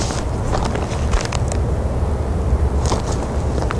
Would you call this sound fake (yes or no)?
no